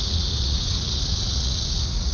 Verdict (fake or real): fake